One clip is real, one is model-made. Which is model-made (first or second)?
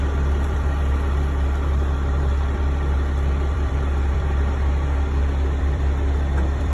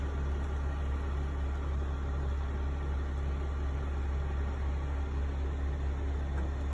first